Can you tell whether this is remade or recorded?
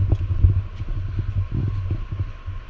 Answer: recorded